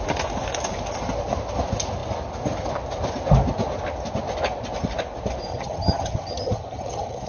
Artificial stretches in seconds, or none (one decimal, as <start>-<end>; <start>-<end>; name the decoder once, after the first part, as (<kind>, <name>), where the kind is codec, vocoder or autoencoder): 5.5-7.3 (vocoder, HiFi-GAN)